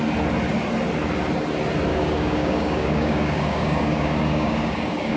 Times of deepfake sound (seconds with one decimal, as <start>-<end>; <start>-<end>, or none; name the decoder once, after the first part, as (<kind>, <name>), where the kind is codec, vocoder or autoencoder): 1.9-5.2 (codec, DAC)